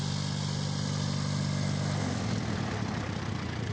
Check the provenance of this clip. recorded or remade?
recorded